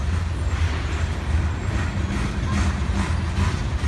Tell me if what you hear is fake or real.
real